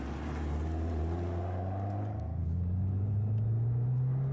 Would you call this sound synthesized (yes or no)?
no